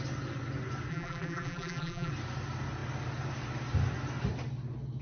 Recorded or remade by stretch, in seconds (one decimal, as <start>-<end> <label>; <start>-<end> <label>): 0.0-0.9 recorded; 0.9-2.1 remade; 2.1-5.0 recorded